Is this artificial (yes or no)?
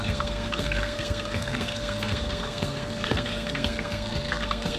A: yes